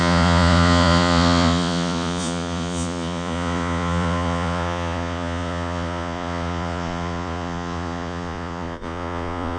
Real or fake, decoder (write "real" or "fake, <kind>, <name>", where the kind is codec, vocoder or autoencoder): fake, vocoder, Vocos